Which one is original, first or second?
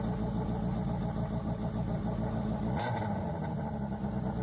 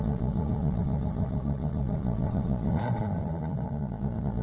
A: first